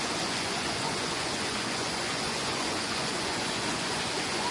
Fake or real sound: fake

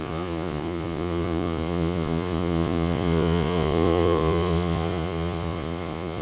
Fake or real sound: fake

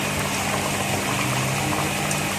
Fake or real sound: real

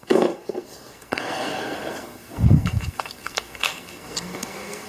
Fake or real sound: fake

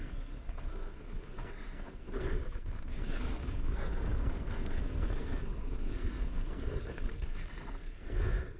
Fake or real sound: fake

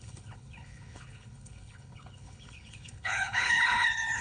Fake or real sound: fake